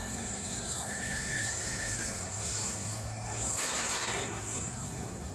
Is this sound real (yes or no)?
no